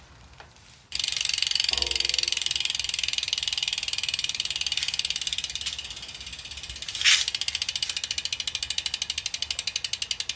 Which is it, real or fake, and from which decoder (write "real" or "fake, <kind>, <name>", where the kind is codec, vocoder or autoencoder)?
real